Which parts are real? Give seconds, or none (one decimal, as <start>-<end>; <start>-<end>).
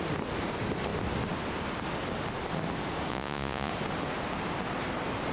0.0-3.1; 3.7-5.3